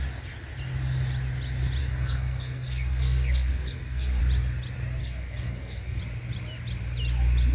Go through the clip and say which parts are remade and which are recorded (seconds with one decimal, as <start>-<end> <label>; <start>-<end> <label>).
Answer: 0.0-1.8 recorded; 1.8-4.2 remade; 4.2-5.0 recorded; 5.0-6.0 remade; 6.0-7.5 recorded

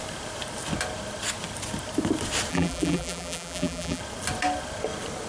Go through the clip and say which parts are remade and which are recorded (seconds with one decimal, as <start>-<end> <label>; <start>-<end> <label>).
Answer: 0.0-2.5 recorded; 2.5-4.0 remade; 4.0-5.3 recorded

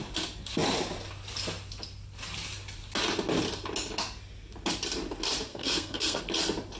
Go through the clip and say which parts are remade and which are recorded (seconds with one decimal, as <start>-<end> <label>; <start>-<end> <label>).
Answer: 0.0-5.5 recorded; 5.5-6.2 remade; 6.2-6.8 recorded